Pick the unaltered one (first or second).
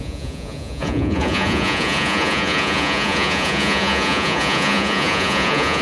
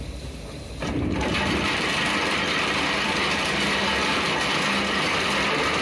second